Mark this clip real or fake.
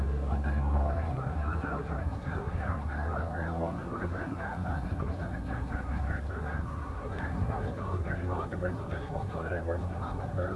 fake